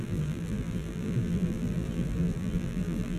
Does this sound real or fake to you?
fake